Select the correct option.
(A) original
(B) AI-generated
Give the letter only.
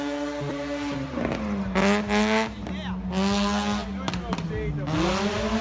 A